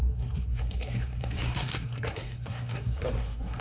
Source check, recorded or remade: remade